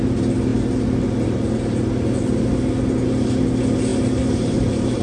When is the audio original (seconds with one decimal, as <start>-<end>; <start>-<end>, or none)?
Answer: 0.0-3.9